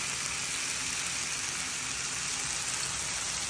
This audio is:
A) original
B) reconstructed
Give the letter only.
A